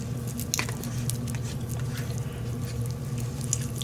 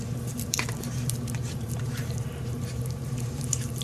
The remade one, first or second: second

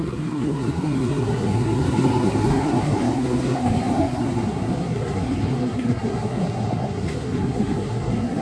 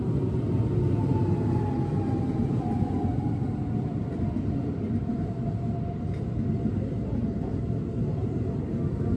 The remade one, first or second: first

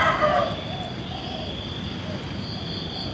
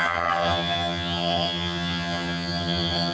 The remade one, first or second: second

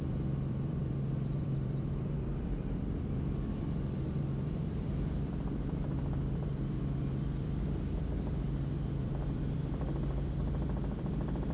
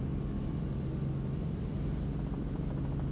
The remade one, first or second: first